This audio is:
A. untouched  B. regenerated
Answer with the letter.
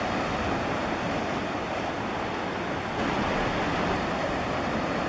A